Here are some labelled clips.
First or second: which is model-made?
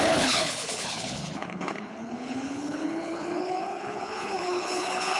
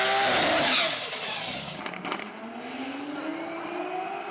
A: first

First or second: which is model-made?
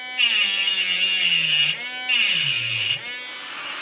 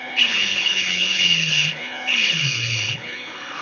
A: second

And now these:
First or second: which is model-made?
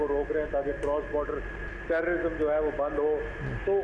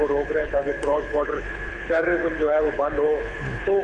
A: second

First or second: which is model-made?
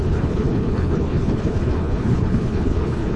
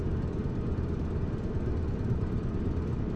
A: first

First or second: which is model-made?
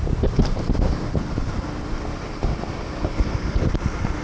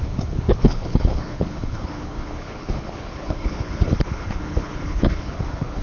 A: second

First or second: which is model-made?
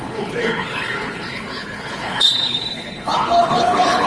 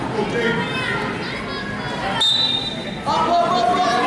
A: first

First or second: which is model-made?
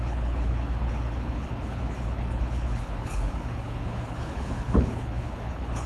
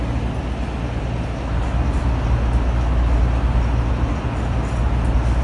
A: first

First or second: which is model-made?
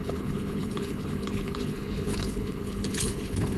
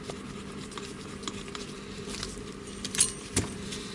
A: first